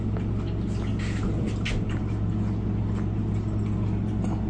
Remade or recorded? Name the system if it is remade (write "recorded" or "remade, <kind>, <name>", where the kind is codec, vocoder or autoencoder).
recorded